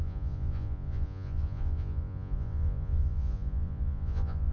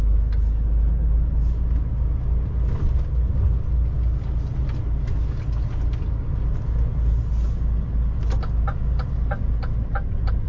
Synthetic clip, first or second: first